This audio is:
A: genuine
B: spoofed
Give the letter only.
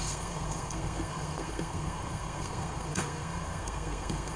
B